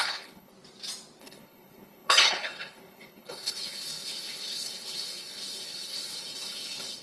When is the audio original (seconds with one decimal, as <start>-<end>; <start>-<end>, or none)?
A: 0.5-1.2